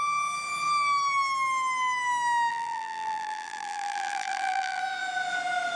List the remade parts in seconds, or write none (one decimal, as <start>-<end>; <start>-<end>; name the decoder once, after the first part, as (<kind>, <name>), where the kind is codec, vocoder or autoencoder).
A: 2.5-4.8 (vocoder, BigVGAN v2)